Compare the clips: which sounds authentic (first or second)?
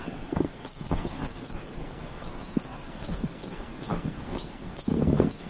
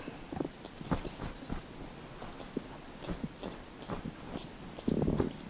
second